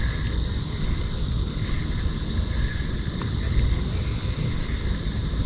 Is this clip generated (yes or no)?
no